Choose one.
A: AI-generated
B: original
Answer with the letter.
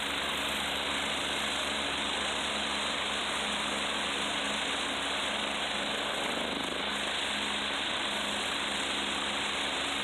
B